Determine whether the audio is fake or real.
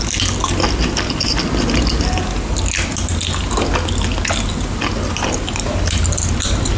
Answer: real